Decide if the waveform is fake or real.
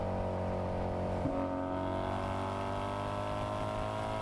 real